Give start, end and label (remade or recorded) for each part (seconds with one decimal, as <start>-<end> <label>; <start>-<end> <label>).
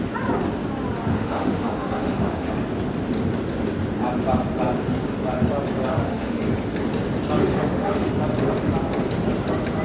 0.0-1.1 recorded; 1.1-2.5 remade; 2.5-5.9 recorded; 5.9-6.5 remade; 6.5-7.4 recorded; 7.4-8.1 remade; 8.1-9.8 recorded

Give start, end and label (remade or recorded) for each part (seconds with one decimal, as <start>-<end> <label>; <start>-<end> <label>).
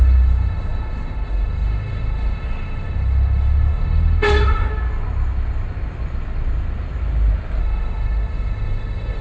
0.0-4.7 remade; 4.7-7.6 recorded; 7.6-9.2 remade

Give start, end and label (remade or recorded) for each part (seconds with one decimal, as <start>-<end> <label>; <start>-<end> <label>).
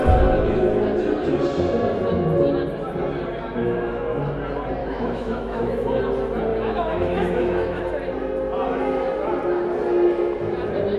0.0-3.6 recorded; 3.6-4.2 remade; 4.2-4.8 recorded; 4.8-6.0 remade; 6.0-6.5 recorded; 6.5-7.8 remade; 7.8-11.0 recorded